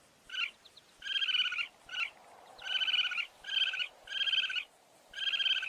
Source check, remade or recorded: recorded